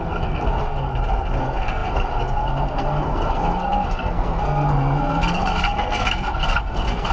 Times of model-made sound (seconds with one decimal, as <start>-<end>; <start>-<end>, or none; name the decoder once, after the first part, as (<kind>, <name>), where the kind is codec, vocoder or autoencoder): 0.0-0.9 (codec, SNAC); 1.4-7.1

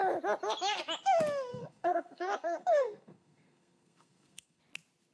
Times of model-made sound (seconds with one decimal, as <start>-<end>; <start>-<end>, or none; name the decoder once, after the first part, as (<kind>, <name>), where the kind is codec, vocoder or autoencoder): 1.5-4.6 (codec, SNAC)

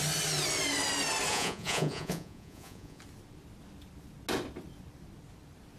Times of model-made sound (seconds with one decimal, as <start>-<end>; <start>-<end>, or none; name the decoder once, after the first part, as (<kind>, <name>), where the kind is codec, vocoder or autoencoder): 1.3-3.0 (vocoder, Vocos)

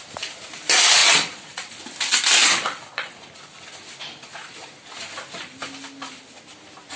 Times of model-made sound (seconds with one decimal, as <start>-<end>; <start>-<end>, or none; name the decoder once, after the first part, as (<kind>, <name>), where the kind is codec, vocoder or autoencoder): 1.0-1.8 (vocoder, Vocos); 2.4-3.2

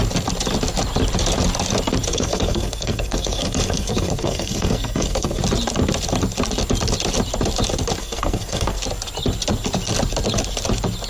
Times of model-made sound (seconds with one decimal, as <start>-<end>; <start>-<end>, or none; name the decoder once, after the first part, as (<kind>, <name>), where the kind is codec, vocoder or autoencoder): 2.1-5.4 (codec, SNAC); 8.0-8.8

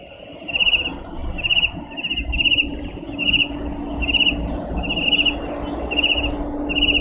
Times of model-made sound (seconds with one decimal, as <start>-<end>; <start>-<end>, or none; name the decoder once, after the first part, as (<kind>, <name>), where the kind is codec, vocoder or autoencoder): none